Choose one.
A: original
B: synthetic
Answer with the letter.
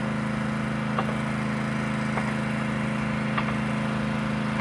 A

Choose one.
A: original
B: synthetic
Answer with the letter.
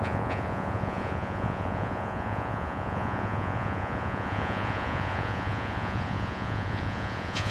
B